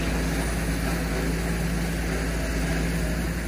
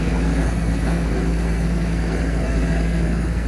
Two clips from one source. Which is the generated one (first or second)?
second